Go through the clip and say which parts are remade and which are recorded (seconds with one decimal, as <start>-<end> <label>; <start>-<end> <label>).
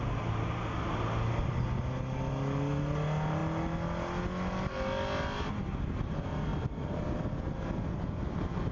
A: 0.0-6.5 recorded; 6.5-7.0 remade; 7.0-8.7 recorded